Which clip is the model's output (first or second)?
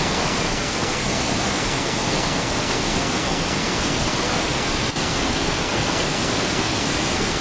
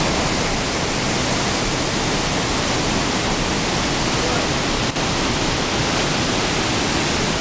first